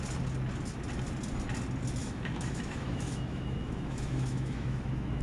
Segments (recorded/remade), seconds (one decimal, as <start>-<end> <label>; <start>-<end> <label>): 0.0-2.0 recorded; 2.0-5.2 remade